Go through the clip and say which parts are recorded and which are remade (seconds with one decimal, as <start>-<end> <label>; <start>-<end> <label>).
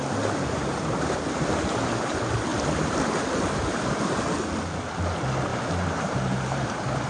0.0-5.5 recorded; 5.5-7.1 remade